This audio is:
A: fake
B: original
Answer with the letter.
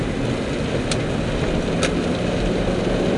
B